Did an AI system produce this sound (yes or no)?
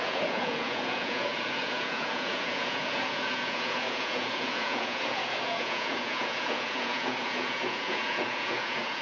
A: yes